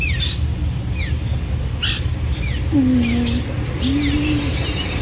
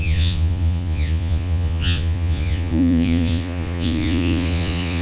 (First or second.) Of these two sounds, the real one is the first